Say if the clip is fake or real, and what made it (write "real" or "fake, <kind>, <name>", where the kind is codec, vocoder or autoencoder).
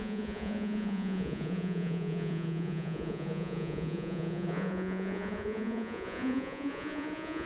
fake, vocoder, Vocos